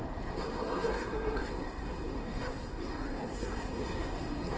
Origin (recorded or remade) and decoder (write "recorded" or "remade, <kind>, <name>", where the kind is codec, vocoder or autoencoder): remade, codec, SNAC